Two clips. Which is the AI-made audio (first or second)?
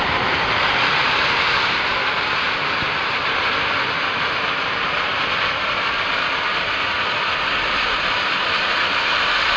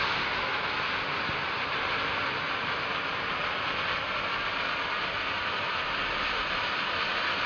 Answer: first